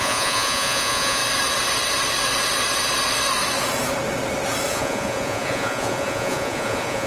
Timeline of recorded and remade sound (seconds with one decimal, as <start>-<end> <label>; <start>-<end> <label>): 0.0-1.2 remade; 1.2-4.7 recorded; 4.7-7.1 remade